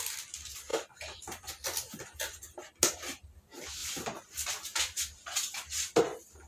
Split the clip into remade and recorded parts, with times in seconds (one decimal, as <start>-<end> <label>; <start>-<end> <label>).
0.0-6.5 recorded